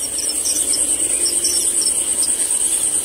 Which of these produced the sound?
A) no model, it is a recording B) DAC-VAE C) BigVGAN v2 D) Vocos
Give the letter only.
A